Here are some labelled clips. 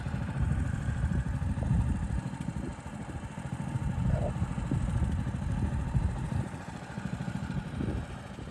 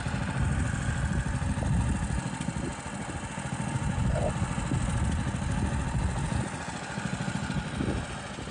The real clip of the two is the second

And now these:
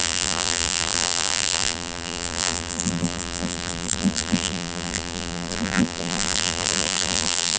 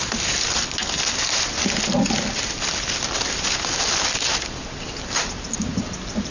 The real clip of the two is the second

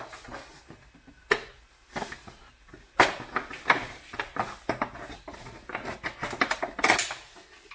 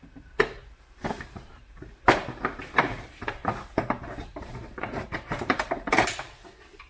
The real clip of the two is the first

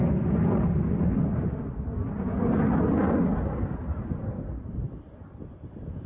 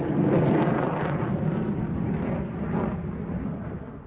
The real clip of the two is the second